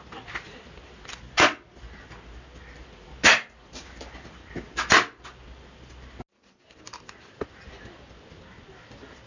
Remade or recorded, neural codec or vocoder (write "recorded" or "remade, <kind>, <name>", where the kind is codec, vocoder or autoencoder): recorded